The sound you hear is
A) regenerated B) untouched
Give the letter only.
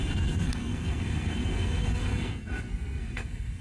A